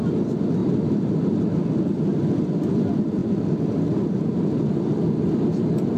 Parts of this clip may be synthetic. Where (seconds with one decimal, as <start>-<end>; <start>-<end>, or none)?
none